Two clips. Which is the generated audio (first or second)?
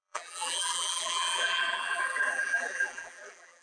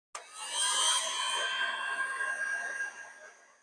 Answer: first